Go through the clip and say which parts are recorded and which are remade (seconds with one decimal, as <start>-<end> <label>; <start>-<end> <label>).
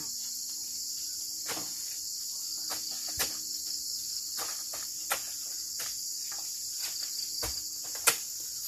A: 0.0-8.7 recorded